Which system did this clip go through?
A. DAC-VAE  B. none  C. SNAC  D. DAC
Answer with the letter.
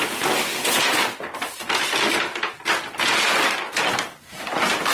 B